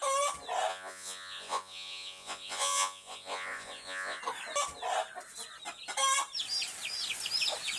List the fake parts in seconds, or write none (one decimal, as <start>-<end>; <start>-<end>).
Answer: 0.7-4.2